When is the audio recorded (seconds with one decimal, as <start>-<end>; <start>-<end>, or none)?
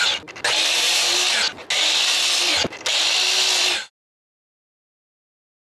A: 0.0-5.7